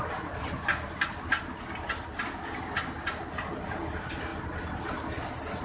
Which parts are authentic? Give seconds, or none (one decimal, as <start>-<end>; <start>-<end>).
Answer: 0.0-5.6